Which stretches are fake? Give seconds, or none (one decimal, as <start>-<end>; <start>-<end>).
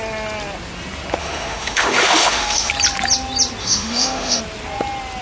1.2-2.7; 3.6-4.4